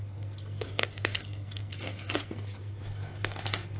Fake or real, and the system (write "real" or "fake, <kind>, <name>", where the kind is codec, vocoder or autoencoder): fake, codec, SNAC